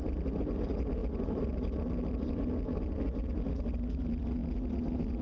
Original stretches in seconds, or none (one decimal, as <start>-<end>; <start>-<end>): 0.0-5.2